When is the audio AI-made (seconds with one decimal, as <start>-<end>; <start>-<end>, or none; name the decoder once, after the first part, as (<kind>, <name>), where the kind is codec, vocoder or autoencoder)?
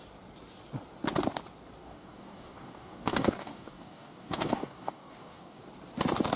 1.8-5.6 (codec, DAC)